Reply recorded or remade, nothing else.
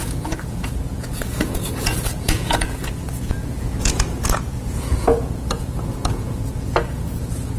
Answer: remade